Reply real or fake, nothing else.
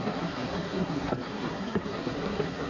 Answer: fake